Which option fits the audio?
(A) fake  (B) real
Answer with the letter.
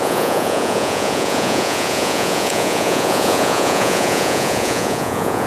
A